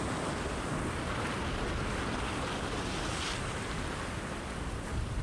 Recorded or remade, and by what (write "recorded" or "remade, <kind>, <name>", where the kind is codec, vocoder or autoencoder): recorded